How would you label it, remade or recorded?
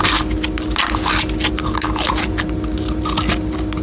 recorded